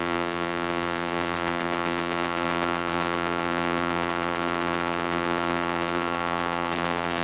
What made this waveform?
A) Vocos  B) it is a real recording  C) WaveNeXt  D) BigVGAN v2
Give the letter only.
D